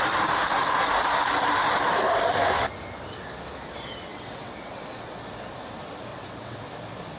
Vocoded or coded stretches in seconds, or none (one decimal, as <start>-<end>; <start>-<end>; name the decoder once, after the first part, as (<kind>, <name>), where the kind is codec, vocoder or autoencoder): 4.1-4.8 (vocoder, WaveNeXt); 6.1-6.6